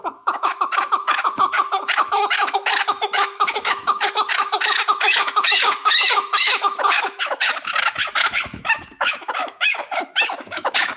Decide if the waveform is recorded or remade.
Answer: remade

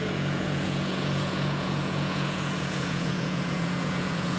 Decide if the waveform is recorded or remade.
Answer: remade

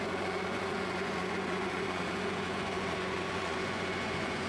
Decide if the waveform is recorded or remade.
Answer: remade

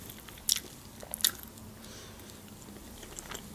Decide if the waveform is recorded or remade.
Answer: recorded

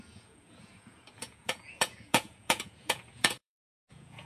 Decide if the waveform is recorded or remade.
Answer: remade